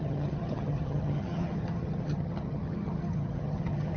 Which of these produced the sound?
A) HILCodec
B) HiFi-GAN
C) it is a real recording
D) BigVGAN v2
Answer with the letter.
B